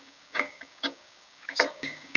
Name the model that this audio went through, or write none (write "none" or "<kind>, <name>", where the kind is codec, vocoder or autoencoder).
codec, DAC